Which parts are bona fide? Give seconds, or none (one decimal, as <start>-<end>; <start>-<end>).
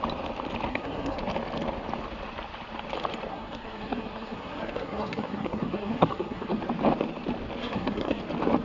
0.0-0.7; 1.2-3.3; 6.6-7.6; 8.2-8.6